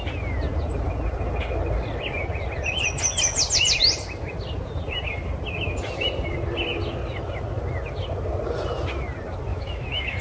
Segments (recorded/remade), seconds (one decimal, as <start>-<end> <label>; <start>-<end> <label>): 0.0-9.5 recorded; 9.5-10.2 remade